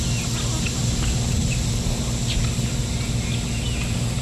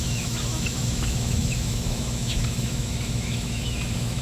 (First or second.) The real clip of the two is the first